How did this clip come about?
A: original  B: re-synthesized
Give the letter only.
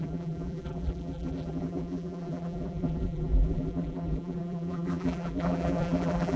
B